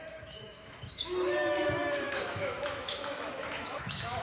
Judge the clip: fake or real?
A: fake